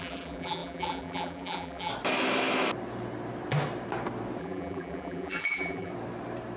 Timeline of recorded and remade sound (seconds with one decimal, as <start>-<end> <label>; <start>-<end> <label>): 0.0-1.9 remade; 1.9-4.4 recorded; 4.4-5.9 remade; 5.9-6.6 recorded